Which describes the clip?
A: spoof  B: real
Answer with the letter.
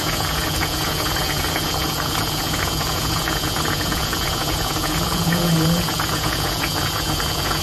A